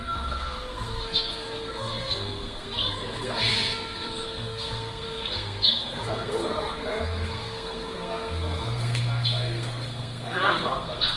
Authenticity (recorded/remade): remade